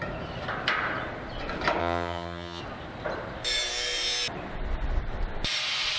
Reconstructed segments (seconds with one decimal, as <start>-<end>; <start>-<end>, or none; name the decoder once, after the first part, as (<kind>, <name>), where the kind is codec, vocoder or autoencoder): 1.8-2.6 (vocoder, HiFi-GAN)